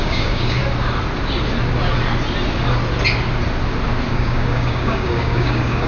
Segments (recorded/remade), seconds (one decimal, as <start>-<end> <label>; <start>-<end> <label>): 0.0-0.6 remade; 0.6-4.1 recorded; 4.1-5.9 remade